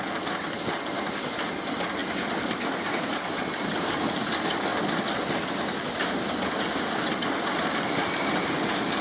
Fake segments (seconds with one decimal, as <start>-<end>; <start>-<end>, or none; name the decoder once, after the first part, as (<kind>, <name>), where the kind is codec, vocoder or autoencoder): none